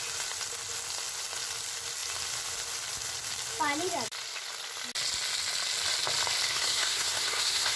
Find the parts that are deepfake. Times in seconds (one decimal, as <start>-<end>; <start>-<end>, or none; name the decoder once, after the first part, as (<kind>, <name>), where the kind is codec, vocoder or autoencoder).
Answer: 6.5-7.8 (codec, SNAC)